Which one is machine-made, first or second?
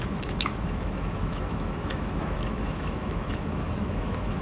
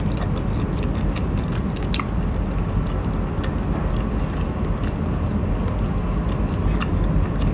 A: first